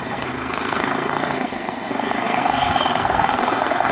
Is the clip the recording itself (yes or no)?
no